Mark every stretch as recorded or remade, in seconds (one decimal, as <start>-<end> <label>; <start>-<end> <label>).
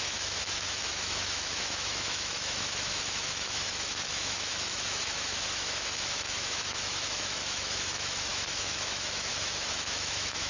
0.0-10.5 remade